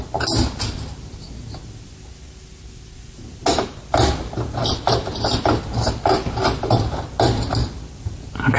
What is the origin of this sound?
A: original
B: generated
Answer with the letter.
A